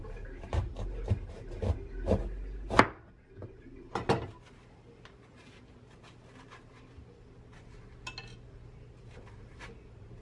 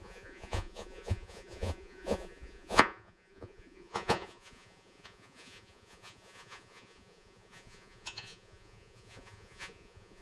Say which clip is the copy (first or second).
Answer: second